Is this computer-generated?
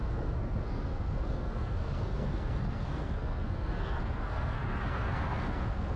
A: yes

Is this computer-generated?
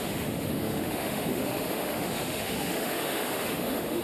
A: yes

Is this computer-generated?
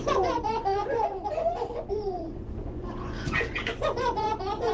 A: yes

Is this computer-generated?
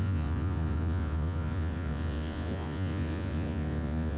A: yes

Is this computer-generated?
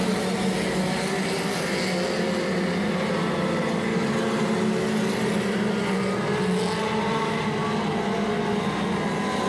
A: no